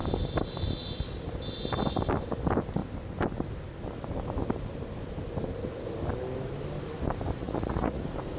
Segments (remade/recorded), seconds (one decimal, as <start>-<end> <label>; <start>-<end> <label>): 0.0-7.4 recorded; 7.4-8.0 remade; 8.0-8.4 recorded